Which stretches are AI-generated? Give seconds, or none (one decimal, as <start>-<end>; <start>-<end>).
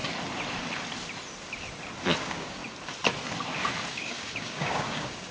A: 2.0-2.6; 3.9-5.3